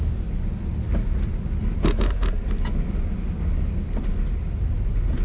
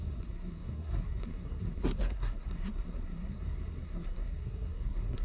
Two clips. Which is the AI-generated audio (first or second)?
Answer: second